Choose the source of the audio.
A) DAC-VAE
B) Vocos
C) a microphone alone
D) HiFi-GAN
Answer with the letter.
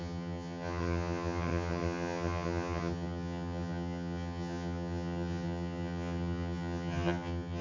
D